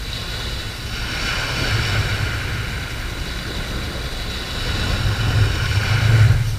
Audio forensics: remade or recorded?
recorded